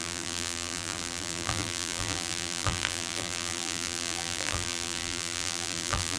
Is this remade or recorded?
remade